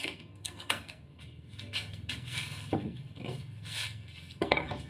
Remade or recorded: remade